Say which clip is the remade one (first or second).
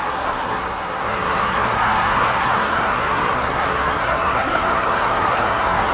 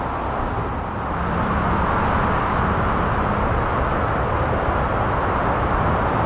first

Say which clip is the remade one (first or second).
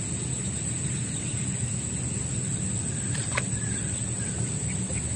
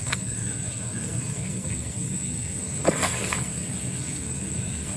second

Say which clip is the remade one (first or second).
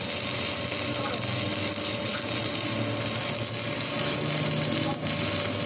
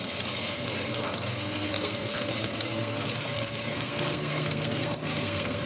second